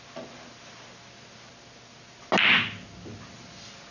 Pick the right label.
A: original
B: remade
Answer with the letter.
A